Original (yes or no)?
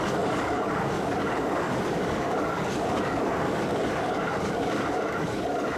no